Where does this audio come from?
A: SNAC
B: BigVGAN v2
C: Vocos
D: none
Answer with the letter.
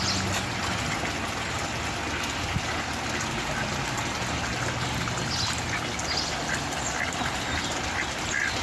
D